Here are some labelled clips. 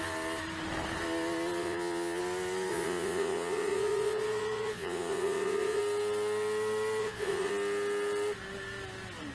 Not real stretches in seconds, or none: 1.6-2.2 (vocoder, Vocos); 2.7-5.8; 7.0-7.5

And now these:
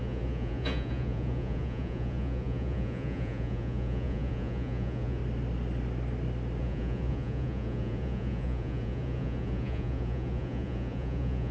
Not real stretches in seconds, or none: 0.0-5.2 (vocoder, Vocos); 6.6-11.5

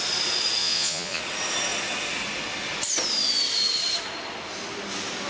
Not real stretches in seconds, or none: 0.6-1.2 (vocoder, Vocos)

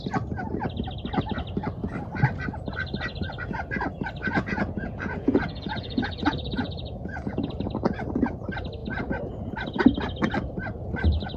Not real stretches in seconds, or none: 4.2-7.5 (vocoder, Vocos); 8.8-9.5

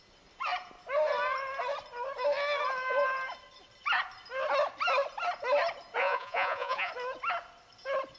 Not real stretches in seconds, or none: 6.0-6.9 (vocoder, Vocos)